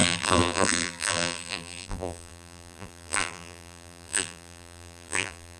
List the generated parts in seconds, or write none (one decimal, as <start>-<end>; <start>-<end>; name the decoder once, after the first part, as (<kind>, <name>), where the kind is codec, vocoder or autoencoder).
0.0-5.6 (vocoder, BigVGAN v2)